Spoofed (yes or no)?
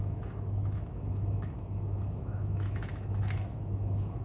yes